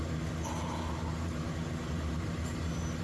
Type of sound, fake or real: real